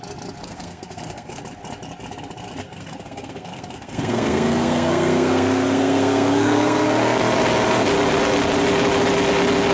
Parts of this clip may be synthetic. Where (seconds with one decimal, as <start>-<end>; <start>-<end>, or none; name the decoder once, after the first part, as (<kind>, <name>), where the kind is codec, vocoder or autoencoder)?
0.4-1.4 (codec, SNAC); 2.6-7.2